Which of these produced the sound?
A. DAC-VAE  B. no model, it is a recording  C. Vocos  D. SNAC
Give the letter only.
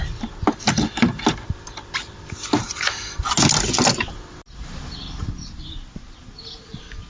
B